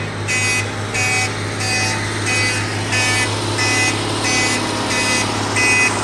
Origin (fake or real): real